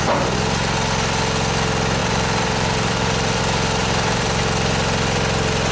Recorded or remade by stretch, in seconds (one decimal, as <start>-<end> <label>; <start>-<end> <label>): 0.0-2.0 recorded; 2.0-3.4 remade; 3.4-3.8 recorded; 3.8-4.4 remade; 4.4-5.7 recorded

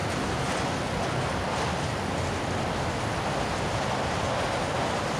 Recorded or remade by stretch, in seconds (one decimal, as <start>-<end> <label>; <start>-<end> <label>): 0.0-5.2 recorded